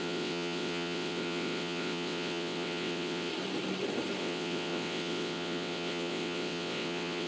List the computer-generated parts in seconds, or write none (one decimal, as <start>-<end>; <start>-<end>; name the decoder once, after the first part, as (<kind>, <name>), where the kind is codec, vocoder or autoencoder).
0.0-3.3 (vocoder, WaveNeXt); 4.2-7.3